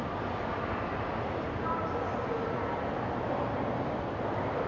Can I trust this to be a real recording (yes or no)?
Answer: yes